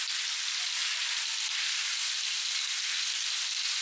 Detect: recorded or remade recorded